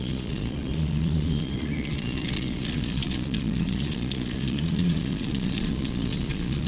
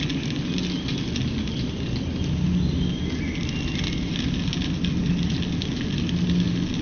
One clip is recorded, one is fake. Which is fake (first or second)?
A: first